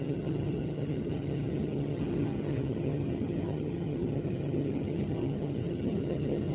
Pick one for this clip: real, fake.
fake